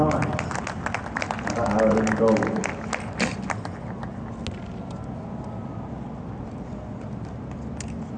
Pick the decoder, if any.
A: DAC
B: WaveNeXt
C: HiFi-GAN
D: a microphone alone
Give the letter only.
D